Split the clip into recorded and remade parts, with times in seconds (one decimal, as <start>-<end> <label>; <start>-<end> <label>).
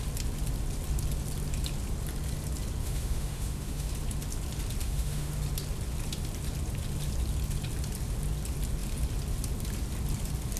0.0-2.8 recorded; 2.8-3.9 remade; 3.9-4.8 recorded; 4.8-5.3 remade; 5.3-10.6 recorded